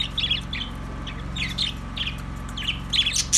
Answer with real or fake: real